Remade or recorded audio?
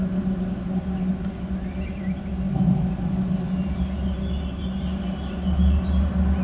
recorded